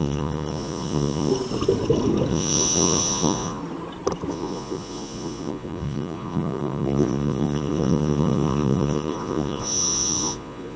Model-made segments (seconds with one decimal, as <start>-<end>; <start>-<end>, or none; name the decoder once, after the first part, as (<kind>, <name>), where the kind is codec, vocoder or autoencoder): 0.0-1.3 (vocoder, Vocos); 2.3-3.6; 4.3-10.8